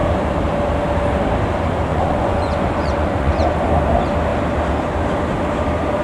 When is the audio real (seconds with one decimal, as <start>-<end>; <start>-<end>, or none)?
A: 0.0-1.9; 3.3-6.0